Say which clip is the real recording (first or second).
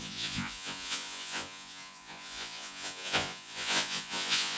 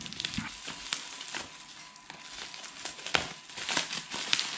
second